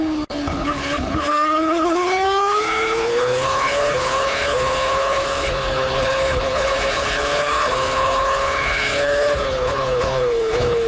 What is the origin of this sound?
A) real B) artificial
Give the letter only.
B